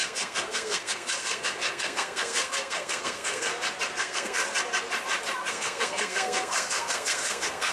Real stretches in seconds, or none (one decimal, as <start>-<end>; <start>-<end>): 3.5-4.0; 4.4-5.5